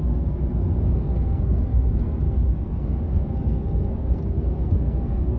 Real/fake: fake